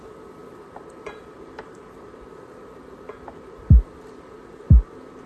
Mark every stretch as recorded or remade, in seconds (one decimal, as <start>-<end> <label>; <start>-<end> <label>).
0.0-0.4 recorded; 0.4-3.6 remade; 3.6-5.3 recorded